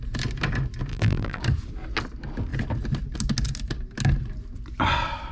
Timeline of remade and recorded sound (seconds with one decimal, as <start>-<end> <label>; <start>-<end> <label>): 0.0-0.9 recorded; 0.9-1.4 remade; 1.4-5.3 recorded